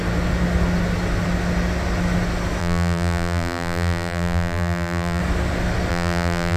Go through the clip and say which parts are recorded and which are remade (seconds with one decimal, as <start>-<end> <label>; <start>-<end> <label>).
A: 0.0-2.6 recorded; 2.6-5.2 remade; 5.2-5.9 recorded; 5.9-6.6 remade